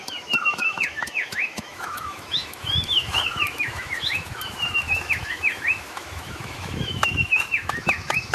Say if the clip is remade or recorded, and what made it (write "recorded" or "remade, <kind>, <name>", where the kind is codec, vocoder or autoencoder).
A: remade, autoencoder, DAC-VAE